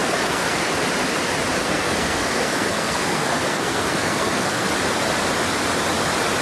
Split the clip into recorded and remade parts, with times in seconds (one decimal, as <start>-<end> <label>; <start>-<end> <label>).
0.0-0.7 remade; 0.7-1.6 recorded; 1.6-4.7 remade; 4.7-6.4 recorded